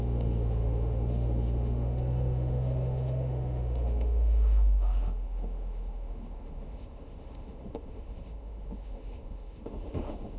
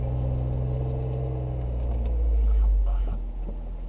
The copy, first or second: first